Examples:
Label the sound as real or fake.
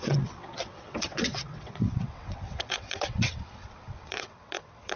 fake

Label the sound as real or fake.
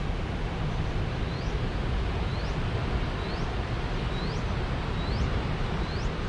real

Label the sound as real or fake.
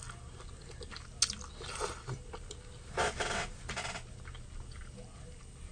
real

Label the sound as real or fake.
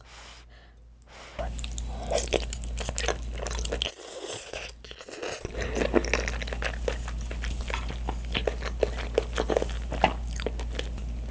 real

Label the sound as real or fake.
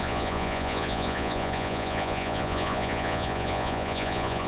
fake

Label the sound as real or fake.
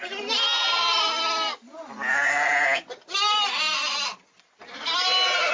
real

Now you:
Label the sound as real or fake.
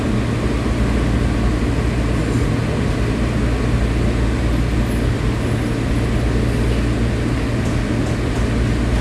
real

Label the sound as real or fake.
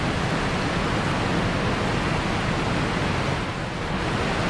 real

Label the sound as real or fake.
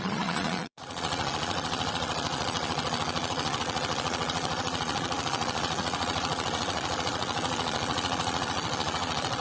fake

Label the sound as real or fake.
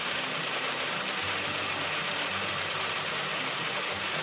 real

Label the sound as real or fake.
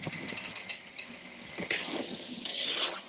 fake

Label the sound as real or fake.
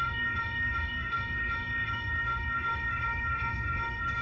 fake